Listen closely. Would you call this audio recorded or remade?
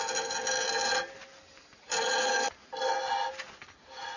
recorded